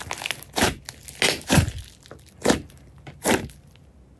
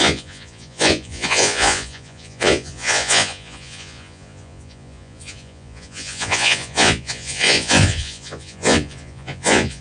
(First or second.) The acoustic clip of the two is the first